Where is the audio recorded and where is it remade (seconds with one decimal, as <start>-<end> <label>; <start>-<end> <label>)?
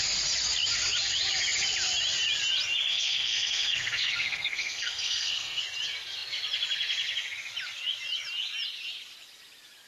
0.0-2.9 recorded; 2.9-5.6 remade; 5.6-9.9 recorded